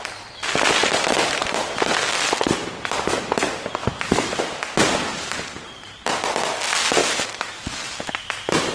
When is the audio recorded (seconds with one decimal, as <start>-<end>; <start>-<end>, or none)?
0.0-3.8; 4.3-5.1; 6.0-7.0; 7.5-8.7